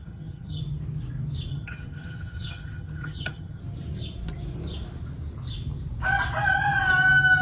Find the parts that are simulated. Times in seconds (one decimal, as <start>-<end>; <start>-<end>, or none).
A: 0.0-0.6; 1.5-3.6